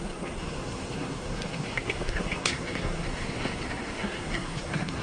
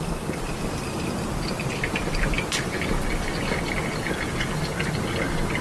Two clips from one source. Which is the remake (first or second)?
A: first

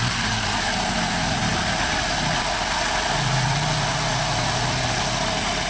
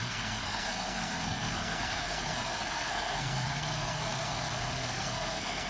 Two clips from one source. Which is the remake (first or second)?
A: second